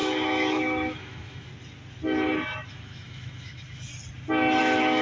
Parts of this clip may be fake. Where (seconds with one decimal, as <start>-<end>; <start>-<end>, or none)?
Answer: 0.0-1.5; 2.7-3.9; 4.6-5.0